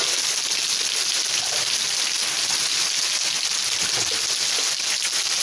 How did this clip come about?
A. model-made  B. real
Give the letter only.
B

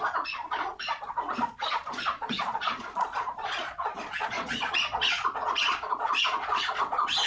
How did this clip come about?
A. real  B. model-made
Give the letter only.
B